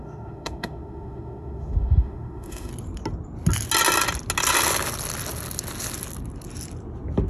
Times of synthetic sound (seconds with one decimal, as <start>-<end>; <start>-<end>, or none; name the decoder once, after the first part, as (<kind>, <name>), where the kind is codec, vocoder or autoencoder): 0.0-2.7 (autoencoder, DAC-VAE)